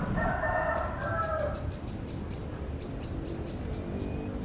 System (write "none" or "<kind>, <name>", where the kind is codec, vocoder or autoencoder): vocoder, BigVGAN v2